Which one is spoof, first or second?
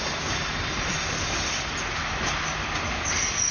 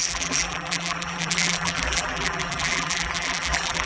second